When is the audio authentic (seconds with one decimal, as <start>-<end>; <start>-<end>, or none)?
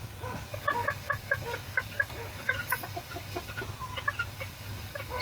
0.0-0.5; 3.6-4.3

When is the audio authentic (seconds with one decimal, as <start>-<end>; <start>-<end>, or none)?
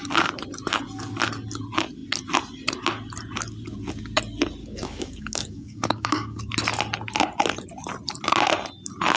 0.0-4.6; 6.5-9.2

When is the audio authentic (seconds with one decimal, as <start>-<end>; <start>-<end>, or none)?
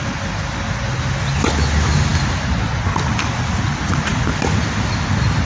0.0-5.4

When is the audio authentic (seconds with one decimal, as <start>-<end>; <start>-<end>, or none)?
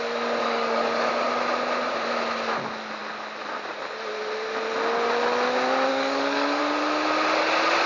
0.0-0.4; 1.1-5.9; 6.6-7.9